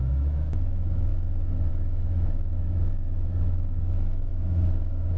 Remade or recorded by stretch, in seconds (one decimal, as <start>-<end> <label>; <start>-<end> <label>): 0.0-1.1 remade; 1.1-1.7 recorded; 1.7-5.2 remade